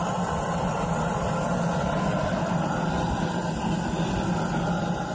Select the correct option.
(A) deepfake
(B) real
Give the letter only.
B